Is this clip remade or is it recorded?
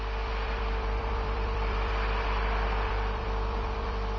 remade